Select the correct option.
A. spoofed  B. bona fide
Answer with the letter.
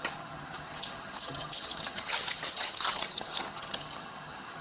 A